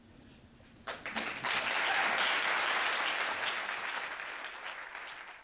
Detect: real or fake real